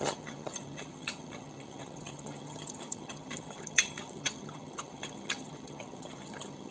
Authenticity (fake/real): fake